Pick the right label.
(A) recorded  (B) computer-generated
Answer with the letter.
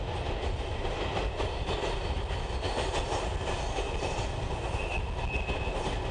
A